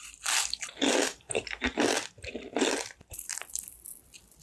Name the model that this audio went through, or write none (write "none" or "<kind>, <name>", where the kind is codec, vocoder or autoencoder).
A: vocoder, BigVGAN v2